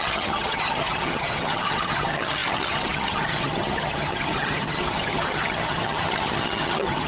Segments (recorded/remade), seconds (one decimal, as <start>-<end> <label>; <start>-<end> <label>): 0.0-7.1 remade